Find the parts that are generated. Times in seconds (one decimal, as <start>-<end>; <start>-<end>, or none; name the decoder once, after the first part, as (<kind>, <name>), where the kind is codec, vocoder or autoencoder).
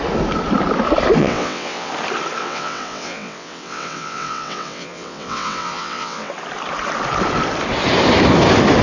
1.2-1.9 (vocoder, WaveNeXt); 2.4-6.3